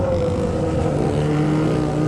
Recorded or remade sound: recorded